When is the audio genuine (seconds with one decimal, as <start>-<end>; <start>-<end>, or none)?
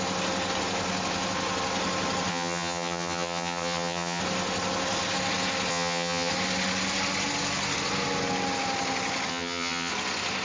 0.0-2.3; 4.2-5.7; 6.3-9.3; 9.9-10.4